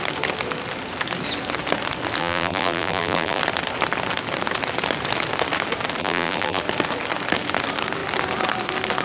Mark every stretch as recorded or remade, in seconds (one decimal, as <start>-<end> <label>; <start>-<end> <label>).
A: 0.0-2.2 recorded; 2.2-3.4 remade; 3.4-6.0 recorded; 6.0-6.6 remade; 6.6-9.0 recorded